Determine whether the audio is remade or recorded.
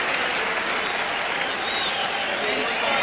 recorded